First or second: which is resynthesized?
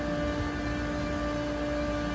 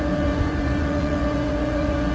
second